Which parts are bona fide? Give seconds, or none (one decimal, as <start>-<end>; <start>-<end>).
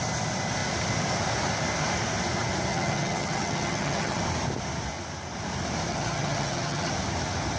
0.0-2.7; 4.2-5.9; 6.9-7.6